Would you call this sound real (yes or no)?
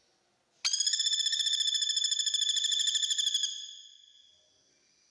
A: yes